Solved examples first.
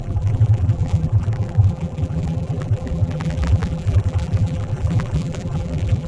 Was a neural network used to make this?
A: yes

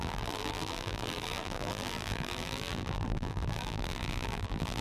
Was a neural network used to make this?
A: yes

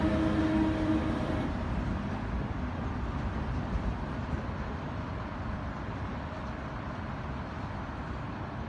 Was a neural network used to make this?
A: yes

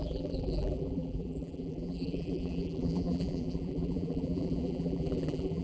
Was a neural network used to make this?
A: yes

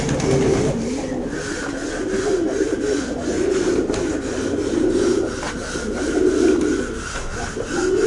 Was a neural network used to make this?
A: no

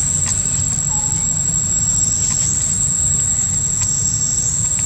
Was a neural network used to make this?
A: no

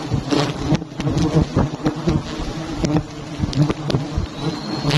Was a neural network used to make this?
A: no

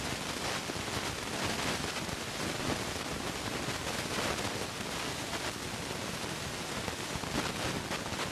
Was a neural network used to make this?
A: no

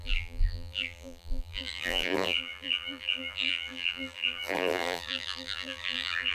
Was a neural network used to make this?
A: yes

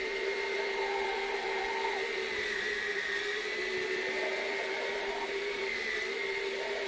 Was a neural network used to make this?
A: yes